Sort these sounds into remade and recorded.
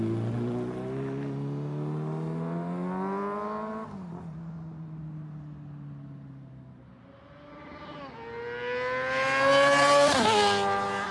recorded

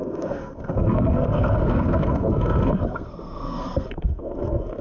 remade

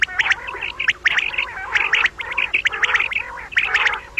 recorded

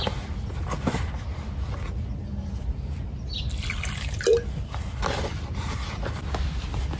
recorded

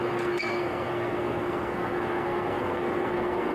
remade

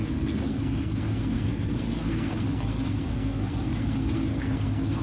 remade